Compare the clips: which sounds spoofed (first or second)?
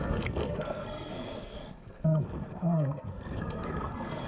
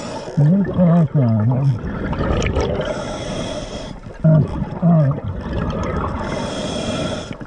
first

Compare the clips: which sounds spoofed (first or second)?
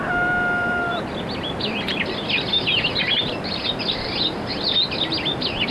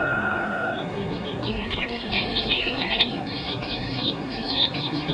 second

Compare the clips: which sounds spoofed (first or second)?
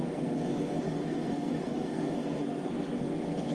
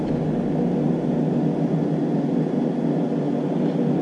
first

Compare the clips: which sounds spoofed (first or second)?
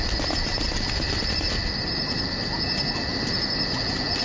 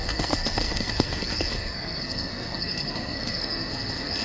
second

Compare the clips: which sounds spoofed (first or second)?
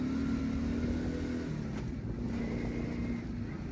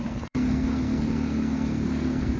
second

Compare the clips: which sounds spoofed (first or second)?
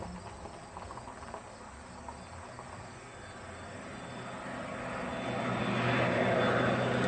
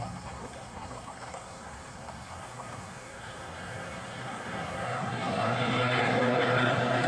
second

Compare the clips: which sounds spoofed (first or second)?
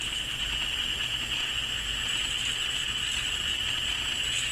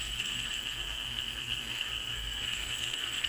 second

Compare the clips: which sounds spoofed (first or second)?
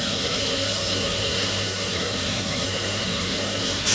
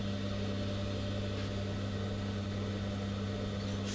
first